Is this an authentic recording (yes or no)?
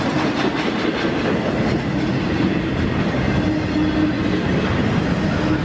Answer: yes